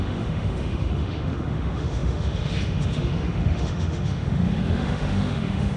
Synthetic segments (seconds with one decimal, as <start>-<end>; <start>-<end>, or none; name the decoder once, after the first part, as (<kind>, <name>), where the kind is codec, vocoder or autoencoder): 0.0-5.8 (autoencoder, DAC-VAE)